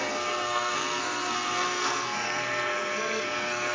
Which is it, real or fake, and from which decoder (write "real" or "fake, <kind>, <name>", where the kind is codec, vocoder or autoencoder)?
fake, codec, SNAC